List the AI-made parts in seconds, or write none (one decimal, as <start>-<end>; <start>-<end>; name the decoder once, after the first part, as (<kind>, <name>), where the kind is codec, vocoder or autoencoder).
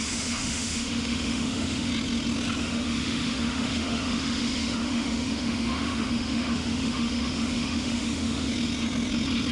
0.0-1.9 (autoencoder, DAC-VAE); 2.6-8.5